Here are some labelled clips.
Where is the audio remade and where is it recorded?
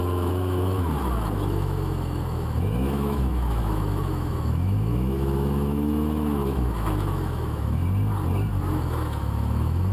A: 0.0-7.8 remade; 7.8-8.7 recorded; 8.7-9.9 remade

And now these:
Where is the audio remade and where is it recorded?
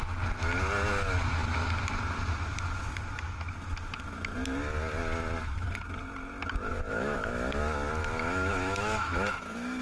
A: 0.0-6.7 recorded; 6.7-7.3 remade; 7.3-8.0 recorded; 8.0-9.8 remade